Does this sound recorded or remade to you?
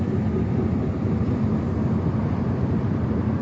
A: recorded